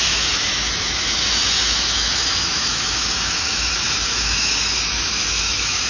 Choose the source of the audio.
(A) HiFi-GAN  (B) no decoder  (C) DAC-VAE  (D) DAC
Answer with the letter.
C